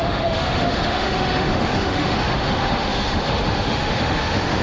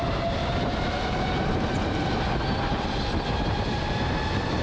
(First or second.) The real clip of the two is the second